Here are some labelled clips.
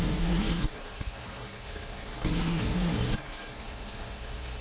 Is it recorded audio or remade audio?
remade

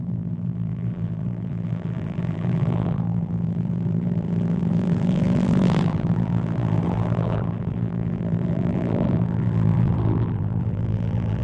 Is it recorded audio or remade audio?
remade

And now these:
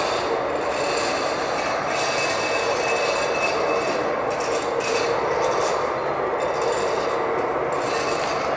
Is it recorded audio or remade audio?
recorded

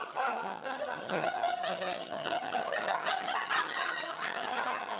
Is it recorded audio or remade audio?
remade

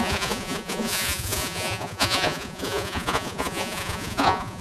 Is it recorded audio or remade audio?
remade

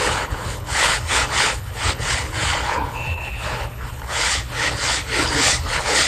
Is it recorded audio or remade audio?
remade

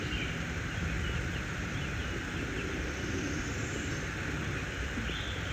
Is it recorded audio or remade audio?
recorded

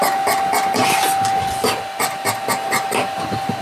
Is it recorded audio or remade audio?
recorded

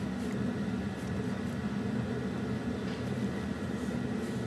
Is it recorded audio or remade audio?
recorded